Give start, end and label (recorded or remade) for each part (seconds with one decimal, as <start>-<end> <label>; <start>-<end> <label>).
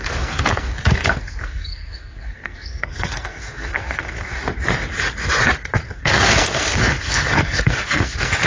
0.0-4.3 remade; 4.3-5.9 recorded; 5.9-8.5 remade